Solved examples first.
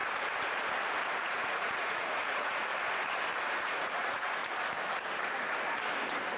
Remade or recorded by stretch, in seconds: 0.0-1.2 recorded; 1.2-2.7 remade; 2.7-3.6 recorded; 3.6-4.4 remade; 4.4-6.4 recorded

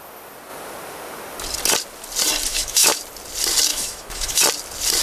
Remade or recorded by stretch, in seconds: 0.0-2.5 recorded; 2.5-3.0 remade; 3.0-3.7 recorded; 3.7-4.4 remade; 4.4-5.0 recorded

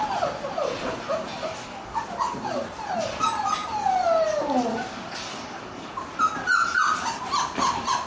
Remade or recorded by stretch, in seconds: 0.0-1.4 recorded; 1.4-2.0 remade; 2.0-4.7 recorded; 4.7-5.9 remade; 5.9-8.1 recorded

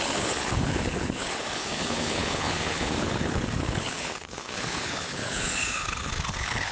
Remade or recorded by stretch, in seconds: 0.0-6.7 remade